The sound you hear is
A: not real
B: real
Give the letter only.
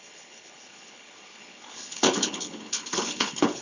A